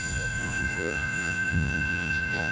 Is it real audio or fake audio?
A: fake